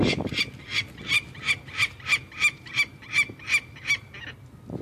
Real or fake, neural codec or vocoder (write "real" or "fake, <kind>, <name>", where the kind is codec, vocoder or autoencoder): real